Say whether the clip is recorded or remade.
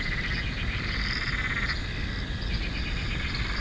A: recorded